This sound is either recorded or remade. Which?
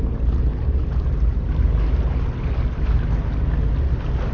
recorded